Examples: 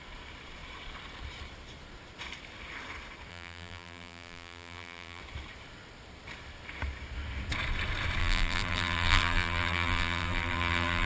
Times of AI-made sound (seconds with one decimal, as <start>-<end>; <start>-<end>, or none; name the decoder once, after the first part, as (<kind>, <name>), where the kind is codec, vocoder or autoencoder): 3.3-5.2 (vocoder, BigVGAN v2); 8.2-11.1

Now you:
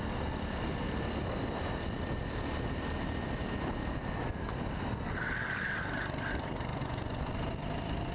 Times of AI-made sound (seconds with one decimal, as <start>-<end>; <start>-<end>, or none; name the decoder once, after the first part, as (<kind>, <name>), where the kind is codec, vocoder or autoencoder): 6.7-7.4 (vocoder, Vocos)

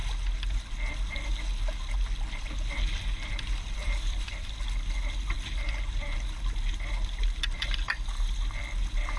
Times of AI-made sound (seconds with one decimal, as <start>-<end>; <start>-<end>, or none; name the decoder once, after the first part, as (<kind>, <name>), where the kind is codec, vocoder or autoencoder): 3.8-4.5 (vocoder, BigVGAN v2)

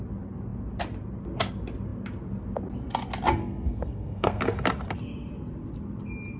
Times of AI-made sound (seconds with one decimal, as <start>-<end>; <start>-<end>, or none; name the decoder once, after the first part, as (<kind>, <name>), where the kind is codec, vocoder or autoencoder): 3.4-4.4 (codec, SNAC)

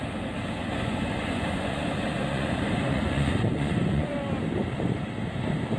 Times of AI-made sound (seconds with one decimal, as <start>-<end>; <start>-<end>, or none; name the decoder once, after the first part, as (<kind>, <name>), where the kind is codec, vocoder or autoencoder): 0.6-4.1 (vocoder, Vocos)

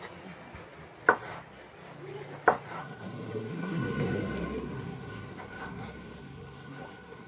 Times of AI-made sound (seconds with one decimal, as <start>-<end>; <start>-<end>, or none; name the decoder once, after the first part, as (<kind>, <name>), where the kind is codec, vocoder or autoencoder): 2.8-7.3 (codec, SNAC)

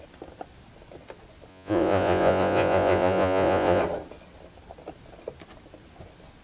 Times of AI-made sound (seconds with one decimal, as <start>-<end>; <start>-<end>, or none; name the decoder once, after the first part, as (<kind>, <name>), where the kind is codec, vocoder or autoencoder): 1.5-3.8 (vocoder, Vocos)

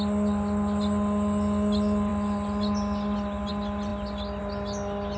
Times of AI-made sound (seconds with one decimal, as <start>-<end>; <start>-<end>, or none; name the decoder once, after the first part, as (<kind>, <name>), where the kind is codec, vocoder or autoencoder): none